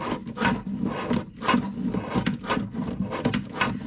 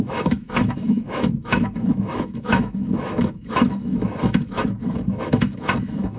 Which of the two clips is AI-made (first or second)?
second